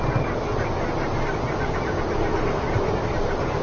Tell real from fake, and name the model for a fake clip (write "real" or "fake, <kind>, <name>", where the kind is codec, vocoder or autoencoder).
real